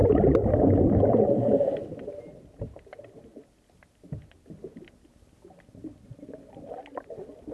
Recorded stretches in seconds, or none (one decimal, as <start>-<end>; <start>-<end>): 0.0-7.5